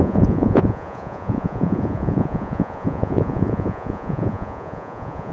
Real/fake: fake